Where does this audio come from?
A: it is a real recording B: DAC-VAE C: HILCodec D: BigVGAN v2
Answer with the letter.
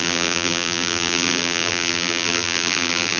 D